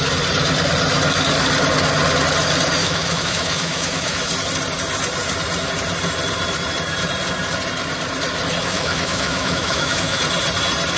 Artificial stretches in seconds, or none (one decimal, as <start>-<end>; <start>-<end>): 2.8-4.3; 8.6-10.2